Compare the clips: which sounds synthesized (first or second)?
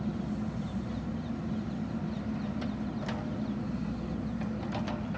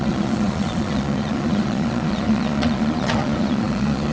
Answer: second